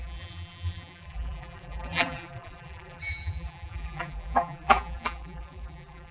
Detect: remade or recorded remade